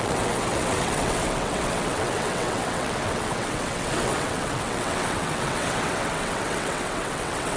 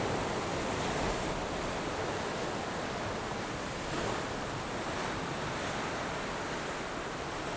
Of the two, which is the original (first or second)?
second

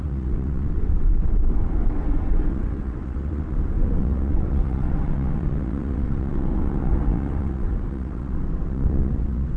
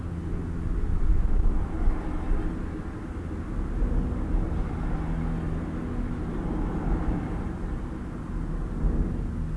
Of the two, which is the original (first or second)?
second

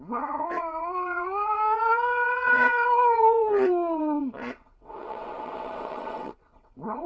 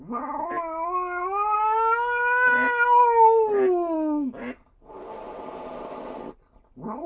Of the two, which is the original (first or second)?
second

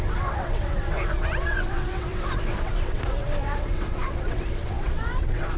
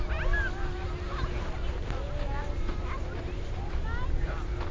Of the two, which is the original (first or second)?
second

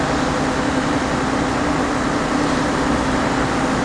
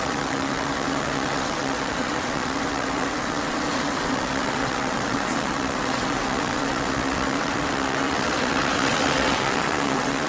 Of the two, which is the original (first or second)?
first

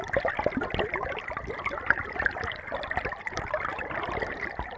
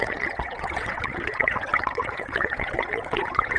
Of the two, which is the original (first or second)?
first